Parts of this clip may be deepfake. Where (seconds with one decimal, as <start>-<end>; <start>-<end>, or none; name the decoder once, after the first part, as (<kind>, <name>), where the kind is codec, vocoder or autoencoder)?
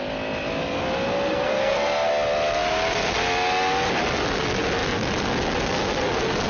1.3-2.1 (codec, SNAC)